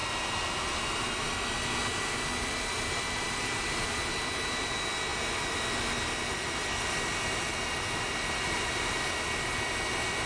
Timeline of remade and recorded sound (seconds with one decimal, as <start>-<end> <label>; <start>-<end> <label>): 0.0-10.3 recorded